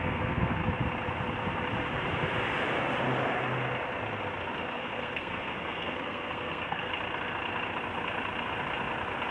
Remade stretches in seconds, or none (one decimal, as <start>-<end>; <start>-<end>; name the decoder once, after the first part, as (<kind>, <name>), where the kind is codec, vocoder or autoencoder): 0.0-0.6 (codec, SNAC); 4.7-6.9